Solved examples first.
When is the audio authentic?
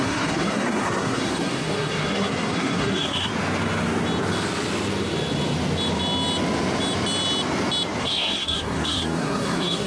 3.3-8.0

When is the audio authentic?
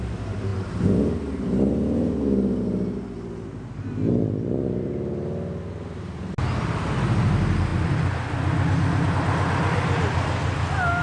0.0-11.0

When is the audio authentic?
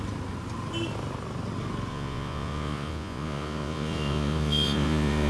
0.0-1.9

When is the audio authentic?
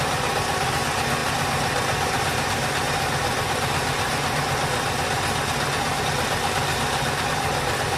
0.0-8.0